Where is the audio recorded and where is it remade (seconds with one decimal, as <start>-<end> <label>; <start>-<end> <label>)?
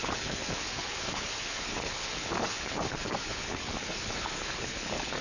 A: 0.0-5.2 remade